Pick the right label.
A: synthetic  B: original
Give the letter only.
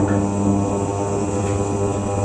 B